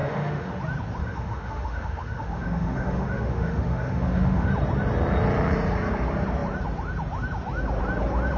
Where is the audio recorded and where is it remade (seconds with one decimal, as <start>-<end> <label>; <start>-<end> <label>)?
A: 0.0-0.6 remade; 0.6-1.0 recorded; 1.0-4.5 remade; 4.5-8.4 recorded